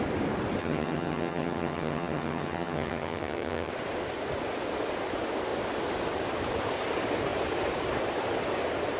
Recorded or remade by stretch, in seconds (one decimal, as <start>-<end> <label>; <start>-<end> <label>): 0.0-0.6 recorded; 0.6-3.7 remade; 3.7-9.0 recorded